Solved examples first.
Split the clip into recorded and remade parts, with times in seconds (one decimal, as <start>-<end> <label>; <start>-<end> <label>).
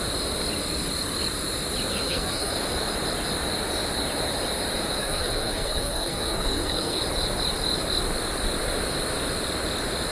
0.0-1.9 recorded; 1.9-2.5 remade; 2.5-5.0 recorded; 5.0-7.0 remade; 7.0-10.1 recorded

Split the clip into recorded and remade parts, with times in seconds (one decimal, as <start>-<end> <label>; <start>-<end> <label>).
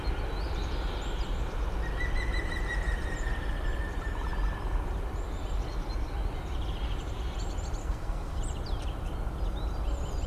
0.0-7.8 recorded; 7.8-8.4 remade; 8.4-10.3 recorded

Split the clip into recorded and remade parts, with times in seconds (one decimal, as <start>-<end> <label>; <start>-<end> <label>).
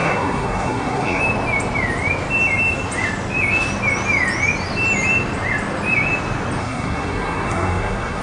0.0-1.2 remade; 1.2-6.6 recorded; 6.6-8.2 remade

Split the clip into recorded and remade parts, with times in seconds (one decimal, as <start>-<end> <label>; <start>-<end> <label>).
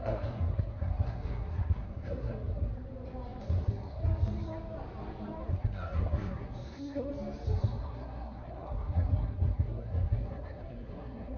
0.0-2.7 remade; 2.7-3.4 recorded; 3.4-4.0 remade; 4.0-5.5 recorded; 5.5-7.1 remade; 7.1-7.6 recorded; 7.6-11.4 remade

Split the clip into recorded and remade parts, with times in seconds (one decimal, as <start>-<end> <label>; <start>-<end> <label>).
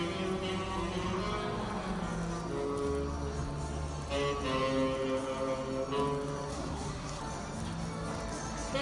0.0-6.5 recorded; 6.5-7.2 remade; 7.2-8.8 recorded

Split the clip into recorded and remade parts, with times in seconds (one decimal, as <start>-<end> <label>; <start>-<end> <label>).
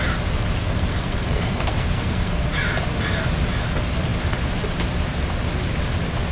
0.0-0.6 recorded; 0.6-2.5 remade; 2.5-6.3 recorded